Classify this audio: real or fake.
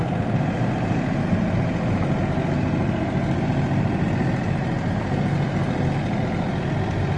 real